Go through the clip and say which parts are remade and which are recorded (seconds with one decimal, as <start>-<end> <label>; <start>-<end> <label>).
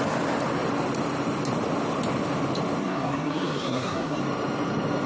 0.0-2.8 recorded; 2.8-4.2 remade; 4.2-5.1 recorded